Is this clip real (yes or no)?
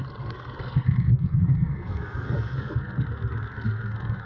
no